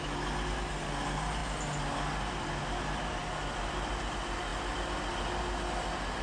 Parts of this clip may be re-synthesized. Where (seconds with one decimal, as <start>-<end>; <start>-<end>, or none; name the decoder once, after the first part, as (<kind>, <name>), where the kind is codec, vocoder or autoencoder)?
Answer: none